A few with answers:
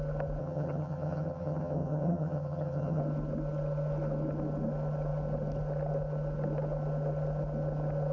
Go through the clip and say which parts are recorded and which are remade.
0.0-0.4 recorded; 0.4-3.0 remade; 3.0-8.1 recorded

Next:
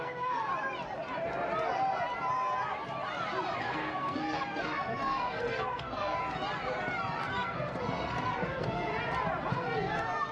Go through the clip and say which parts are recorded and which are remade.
0.0-0.5 remade; 0.5-3.6 recorded; 3.6-6.2 remade; 6.2-7.2 recorded; 7.2-8.9 remade; 8.9-9.5 recorded; 9.5-10.3 remade

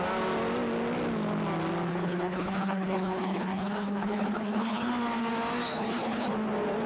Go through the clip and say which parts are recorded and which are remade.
0.0-1.9 recorded; 1.9-4.9 remade; 4.9-5.7 recorded; 5.7-6.3 remade; 6.3-6.9 recorded

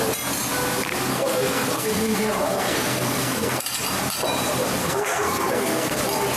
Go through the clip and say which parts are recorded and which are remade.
0.0-1.1 recorded; 1.1-3.6 remade; 3.6-4.8 recorded; 4.8-6.0 remade; 6.0-6.4 recorded

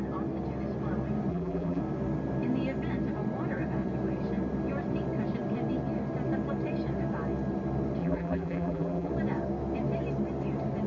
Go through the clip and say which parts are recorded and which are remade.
0.0-1.3 recorded; 1.3-1.8 remade; 1.8-8.0 recorded; 8.0-9.1 remade; 9.1-10.9 recorded

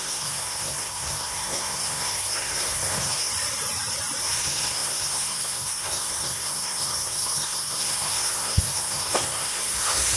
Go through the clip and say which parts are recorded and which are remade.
0.0-3.3 remade; 3.3-4.2 recorded; 4.2-10.2 remade

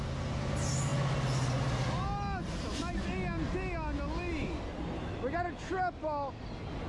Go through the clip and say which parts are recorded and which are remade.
0.0-6.9 recorded

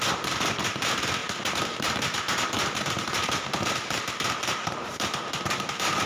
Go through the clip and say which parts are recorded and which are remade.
0.0-6.1 remade